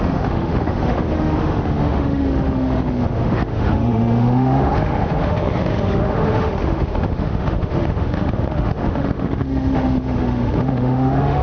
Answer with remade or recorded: remade